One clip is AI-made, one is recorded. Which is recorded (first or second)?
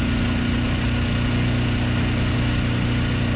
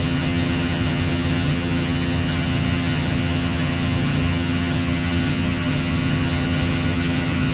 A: first